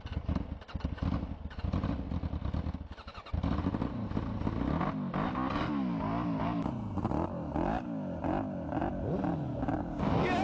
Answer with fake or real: real